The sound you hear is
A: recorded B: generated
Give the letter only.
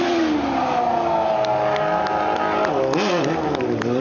A